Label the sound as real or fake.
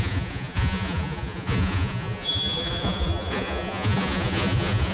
fake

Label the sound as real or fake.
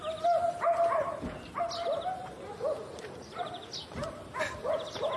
real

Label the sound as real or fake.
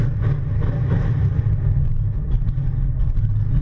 real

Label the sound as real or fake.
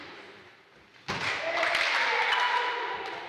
real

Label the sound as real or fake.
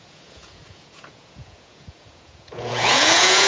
fake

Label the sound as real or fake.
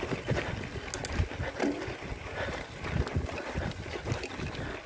real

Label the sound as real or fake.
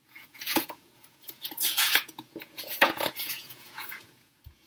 fake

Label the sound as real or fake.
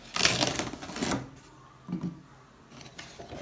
real